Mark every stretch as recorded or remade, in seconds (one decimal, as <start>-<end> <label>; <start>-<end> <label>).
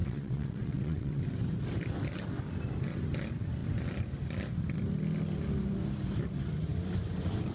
0.0-1.2 remade; 1.2-7.5 recorded